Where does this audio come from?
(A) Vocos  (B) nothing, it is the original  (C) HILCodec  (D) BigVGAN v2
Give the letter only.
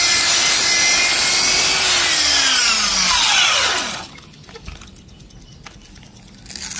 B